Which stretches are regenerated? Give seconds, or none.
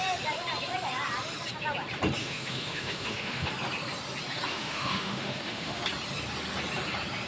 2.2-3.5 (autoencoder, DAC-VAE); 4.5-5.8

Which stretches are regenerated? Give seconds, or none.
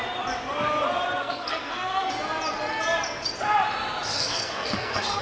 1.2-2.1 (codec, SNAC); 4.1-5.2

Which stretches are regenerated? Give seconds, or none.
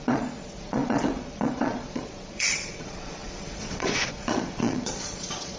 0.0-5.6 (vocoder, Vocos)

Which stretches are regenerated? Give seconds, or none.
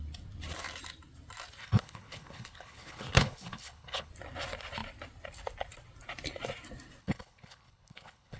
1.6-4.1 (codec, HILCodec); 7.0-8.4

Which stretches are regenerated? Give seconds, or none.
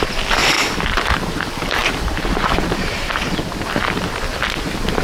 0.4-1.2 (vocoder, BigVGAN v2); 1.8-3.1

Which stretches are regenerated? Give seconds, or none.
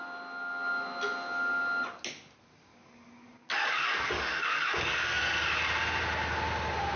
2.7-5.2 (codec, DAC)